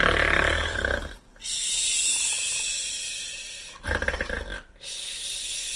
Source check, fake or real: real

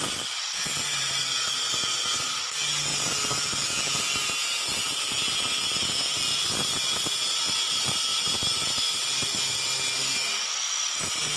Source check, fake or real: real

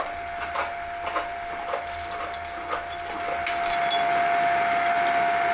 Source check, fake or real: real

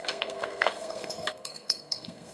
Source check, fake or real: fake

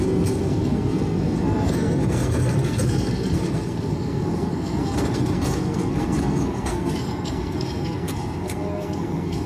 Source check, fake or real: fake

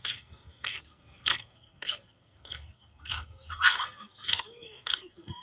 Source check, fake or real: fake